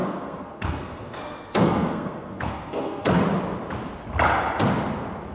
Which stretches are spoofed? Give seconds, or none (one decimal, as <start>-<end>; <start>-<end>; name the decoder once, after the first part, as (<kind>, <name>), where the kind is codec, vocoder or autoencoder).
0.0-3.2 (codec, SNAC)